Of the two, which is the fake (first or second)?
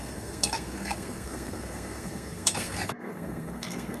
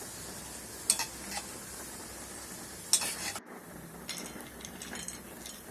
first